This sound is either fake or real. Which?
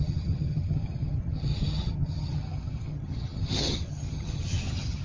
fake